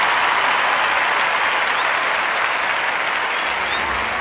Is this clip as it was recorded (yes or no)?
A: yes